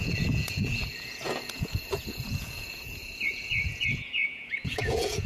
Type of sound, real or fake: fake